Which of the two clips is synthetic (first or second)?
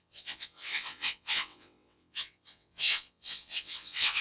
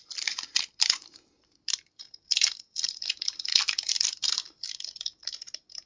first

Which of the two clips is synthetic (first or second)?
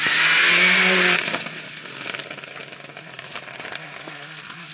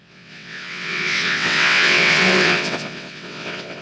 second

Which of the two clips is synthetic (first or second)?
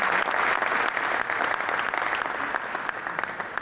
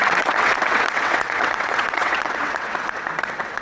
second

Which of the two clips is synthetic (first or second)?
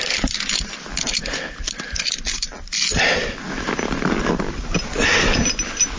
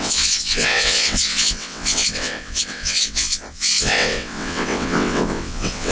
second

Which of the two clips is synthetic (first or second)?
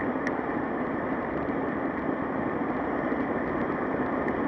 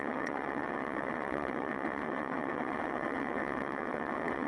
second